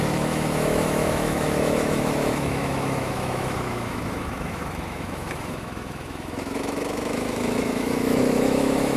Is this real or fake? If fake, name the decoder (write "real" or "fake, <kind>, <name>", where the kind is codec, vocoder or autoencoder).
fake, autoencoder, DAC-VAE